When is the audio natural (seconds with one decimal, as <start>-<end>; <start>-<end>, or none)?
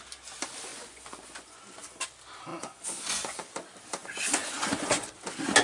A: 0.0-0.7; 1.6-2.5; 3.6-4.0; 5.1-5.6